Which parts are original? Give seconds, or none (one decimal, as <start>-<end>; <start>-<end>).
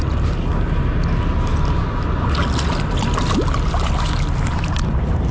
0.0-4.5